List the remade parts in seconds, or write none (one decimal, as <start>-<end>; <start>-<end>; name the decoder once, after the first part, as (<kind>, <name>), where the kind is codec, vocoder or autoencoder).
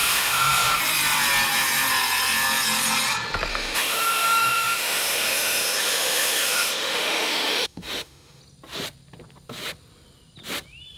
0.0-0.8 (autoencoder, DAC-VAE); 3.5-8.4